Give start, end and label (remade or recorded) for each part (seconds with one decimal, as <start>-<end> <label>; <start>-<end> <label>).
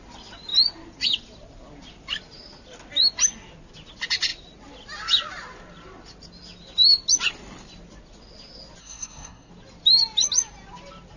0.0-8.8 recorded; 8.8-9.5 remade; 9.5-11.2 recorded